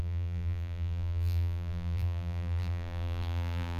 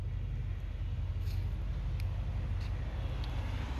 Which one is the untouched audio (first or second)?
second